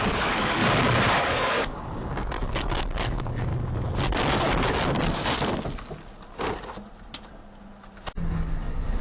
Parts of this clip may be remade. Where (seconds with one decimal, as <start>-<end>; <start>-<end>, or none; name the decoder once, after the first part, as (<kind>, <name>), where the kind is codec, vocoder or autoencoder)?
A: 0.0-0.6 (codec, DAC); 1.2-3.5; 8.3-9.0